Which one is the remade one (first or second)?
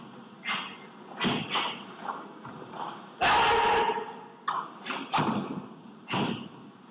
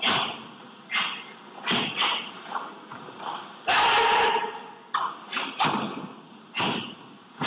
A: second